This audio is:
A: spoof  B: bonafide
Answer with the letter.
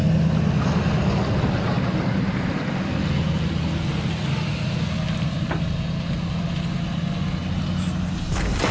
B